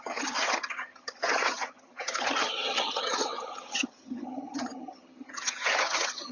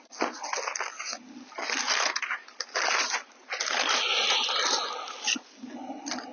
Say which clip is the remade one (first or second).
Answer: first